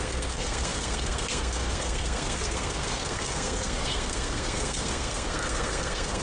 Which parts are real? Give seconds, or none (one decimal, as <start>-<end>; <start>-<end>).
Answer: none